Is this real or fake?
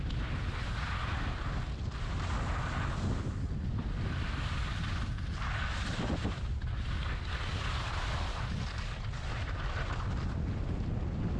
real